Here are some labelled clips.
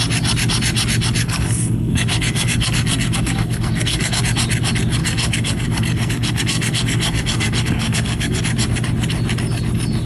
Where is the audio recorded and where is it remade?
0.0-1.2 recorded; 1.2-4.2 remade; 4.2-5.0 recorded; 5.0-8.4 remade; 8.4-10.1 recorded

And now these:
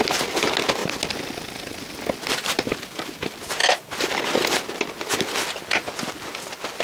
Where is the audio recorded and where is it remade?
0.0-6.8 recorded

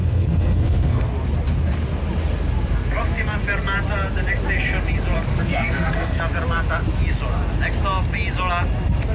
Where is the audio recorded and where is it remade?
0.0-1.1 remade; 1.1-5.3 recorded; 5.3-6.2 remade; 6.2-9.1 recorded

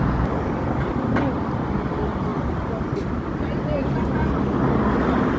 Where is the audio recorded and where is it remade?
0.0-5.4 recorded